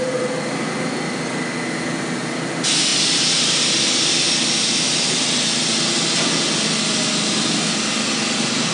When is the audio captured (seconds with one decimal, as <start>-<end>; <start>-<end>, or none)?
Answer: 0.0-8.7